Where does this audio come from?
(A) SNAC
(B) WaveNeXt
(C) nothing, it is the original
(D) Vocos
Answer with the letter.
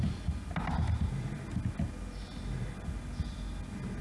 C